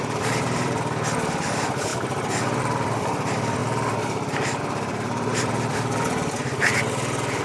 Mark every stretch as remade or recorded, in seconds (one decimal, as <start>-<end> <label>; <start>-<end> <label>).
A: 0.0-1.9 remade; 1.9-2.6 recorded; 2.6-3.6 remade; 3.6-4.6 recorded; 4.6-7.4 remade